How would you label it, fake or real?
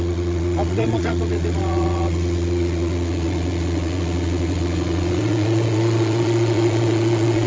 fake